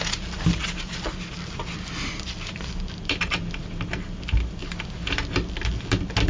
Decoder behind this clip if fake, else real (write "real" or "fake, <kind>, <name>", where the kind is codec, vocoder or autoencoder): real